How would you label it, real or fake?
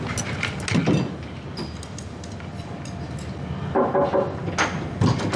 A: real